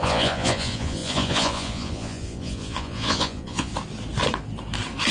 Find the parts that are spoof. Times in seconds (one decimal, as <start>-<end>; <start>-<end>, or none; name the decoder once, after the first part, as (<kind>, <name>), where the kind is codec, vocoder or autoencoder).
0.0-3.7 (vocoder, Vocos)